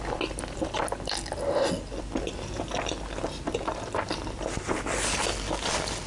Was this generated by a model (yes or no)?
no